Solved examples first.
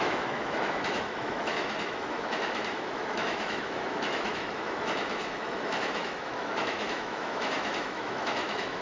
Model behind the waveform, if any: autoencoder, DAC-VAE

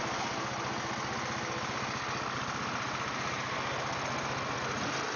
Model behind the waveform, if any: none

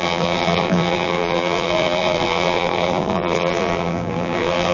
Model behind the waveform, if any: vocoder, BigVGAN v2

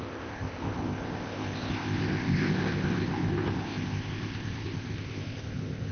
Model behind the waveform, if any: codec, ZipCodec